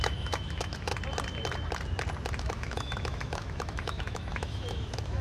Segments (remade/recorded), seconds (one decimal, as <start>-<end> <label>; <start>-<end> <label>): 0.0-0.9 remade; 0.9-2.3 recorded; 2.3-5.2 remade